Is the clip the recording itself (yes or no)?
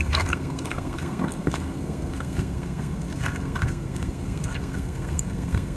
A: no